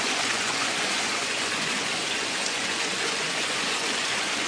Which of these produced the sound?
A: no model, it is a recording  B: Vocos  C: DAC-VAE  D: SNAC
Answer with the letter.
B